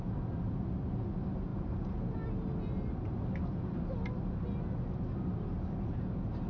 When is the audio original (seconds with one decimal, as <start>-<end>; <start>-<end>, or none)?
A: 0.0-6.5